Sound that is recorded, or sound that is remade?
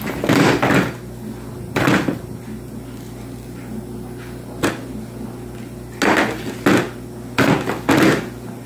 recorded